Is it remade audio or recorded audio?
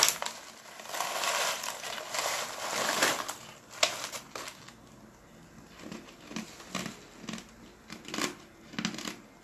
recorded